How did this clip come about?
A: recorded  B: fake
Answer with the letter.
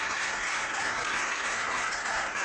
B